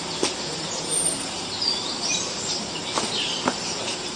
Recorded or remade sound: remade